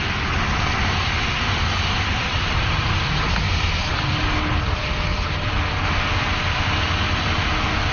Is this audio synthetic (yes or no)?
no